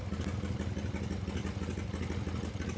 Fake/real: real